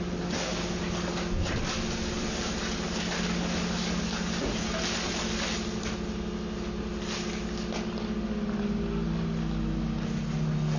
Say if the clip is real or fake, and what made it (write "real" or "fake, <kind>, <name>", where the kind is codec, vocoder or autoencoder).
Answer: real